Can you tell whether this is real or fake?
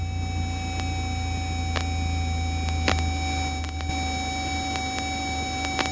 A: real